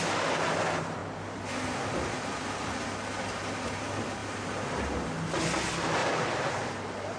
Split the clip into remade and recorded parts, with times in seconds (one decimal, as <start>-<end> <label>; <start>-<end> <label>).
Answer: 0.0-6.0 recorded; 6.0-6.5 remade; 6.5-7.2 recorded